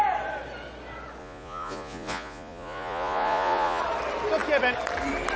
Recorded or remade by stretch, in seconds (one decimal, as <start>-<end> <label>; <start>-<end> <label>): 0.0-1.2 recorded; 1.2-3.8 remade; 3.8-5.4 recorded